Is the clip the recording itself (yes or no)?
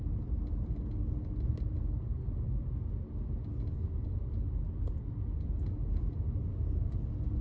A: yes